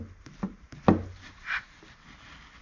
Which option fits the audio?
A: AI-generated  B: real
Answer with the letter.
B